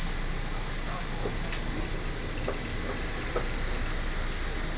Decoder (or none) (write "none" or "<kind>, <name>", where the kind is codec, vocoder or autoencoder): none